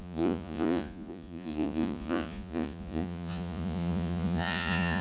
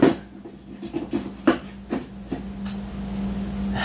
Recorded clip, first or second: second